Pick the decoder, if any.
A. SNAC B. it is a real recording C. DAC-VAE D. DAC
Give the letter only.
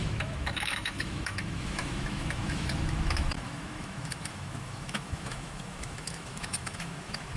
C